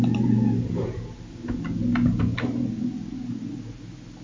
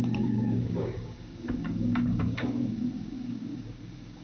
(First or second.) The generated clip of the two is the second